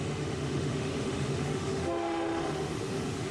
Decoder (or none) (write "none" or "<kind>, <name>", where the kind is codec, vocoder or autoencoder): autoencoder, DAC-VAE